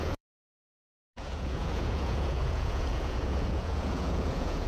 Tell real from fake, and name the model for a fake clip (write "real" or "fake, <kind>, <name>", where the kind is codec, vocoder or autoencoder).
fake, vocoder, Vocos